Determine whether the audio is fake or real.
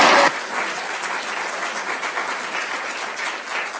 real